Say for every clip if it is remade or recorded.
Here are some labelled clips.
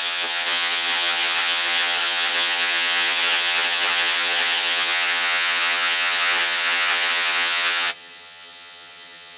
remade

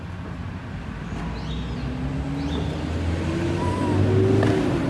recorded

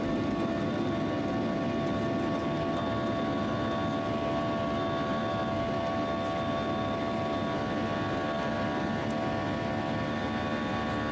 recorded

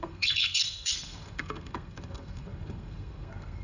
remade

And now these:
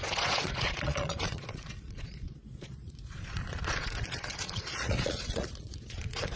remade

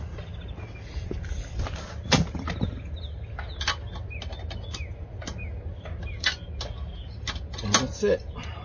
recorded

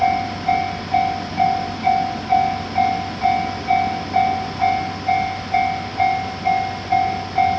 recorded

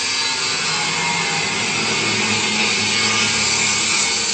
recorded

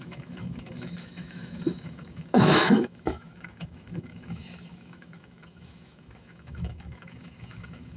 remade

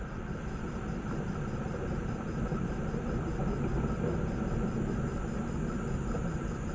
recorded